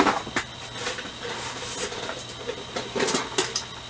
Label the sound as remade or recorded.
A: recorded